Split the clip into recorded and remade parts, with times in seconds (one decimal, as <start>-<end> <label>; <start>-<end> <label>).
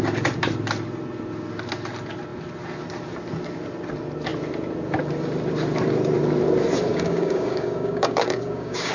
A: 0.0-6.9 recorded; 6.9-8.9 remade